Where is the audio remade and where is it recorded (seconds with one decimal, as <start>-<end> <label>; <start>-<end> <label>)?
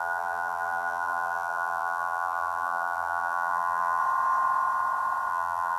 0.0-4.0 remade; 4.0-5.3 recorded; 5.3-5.8 remade